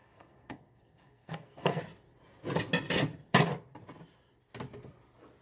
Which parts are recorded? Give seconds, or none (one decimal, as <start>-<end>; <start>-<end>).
1.8-5.4